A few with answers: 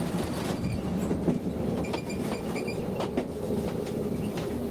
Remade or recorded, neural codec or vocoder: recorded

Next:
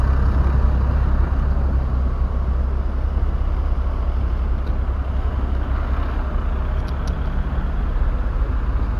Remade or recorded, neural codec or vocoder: recorded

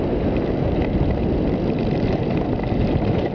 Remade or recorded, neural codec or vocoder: recorded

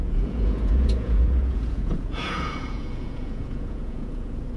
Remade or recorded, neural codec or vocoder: remade, vocoder, Vocos